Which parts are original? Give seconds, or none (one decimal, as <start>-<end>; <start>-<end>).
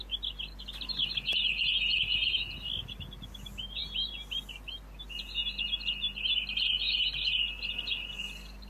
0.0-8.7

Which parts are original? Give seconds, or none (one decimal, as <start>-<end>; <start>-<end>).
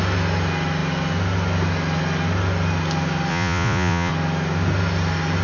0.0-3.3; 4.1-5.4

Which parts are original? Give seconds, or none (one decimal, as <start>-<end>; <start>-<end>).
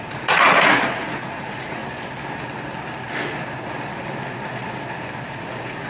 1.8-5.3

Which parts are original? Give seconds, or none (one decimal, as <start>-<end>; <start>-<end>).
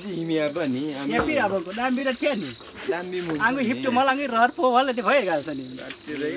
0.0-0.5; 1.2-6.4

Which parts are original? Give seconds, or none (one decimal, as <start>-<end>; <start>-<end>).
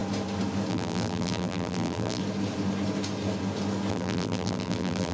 0.0-0.7; 2.2-3.9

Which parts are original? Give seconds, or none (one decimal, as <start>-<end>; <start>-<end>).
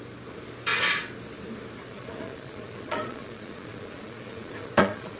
0.0-1.9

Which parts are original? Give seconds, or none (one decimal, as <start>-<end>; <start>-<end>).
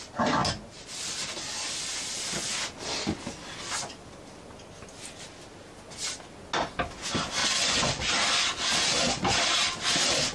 0.0-7.4; 8.0-10.3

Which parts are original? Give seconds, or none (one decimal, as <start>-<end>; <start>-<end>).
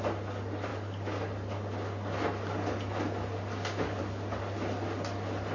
0.0-5.5